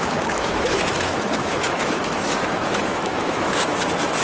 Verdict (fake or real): fake